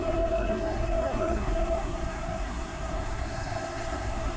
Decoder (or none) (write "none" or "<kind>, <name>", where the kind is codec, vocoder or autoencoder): codec, SNAC